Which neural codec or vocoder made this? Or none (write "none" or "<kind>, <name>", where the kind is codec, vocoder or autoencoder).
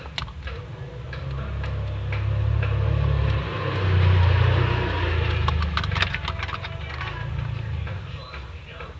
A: none